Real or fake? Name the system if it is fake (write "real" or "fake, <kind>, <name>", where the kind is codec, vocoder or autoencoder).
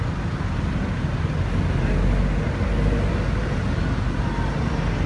real